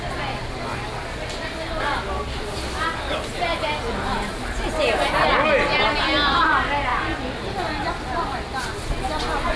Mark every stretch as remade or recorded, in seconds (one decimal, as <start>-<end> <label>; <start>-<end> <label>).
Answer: 0.0-9.6 recorded